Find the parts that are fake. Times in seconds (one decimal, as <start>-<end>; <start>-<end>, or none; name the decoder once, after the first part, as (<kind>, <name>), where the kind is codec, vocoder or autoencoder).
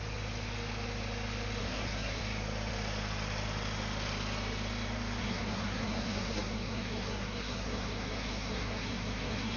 1.6-2.2 (codec, SNAC); 5.2-9.6